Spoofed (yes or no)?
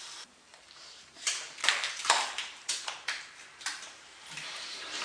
yes